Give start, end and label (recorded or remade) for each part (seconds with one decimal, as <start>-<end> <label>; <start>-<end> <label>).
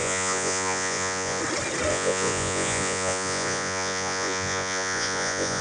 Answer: 0.0-1.4 remade; 1.4-1.9 recorded; 1.9-5.6 remade